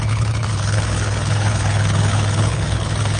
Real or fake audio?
fake